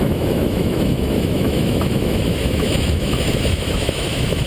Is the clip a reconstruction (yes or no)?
yes